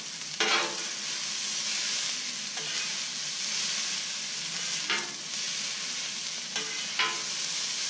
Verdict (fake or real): real